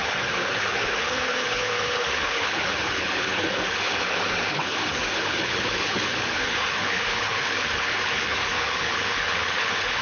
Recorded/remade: remade